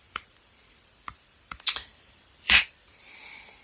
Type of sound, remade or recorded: remade